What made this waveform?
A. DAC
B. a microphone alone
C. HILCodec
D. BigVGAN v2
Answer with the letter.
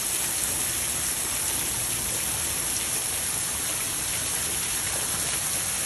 B